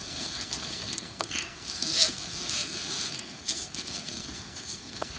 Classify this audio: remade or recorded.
remade